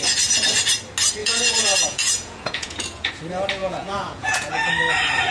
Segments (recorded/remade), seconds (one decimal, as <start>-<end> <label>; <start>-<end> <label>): 0.0-1.2 recorded; 1.2-3.1 remade; 3.1-3.6 recorded; 3.6-4.7 remade; 4.7-5.3 recorded